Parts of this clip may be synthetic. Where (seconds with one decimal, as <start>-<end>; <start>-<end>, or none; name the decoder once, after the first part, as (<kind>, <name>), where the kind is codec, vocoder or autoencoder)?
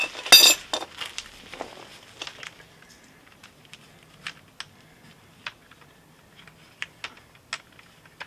none